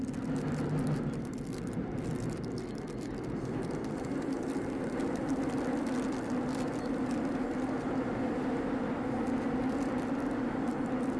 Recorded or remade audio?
recorded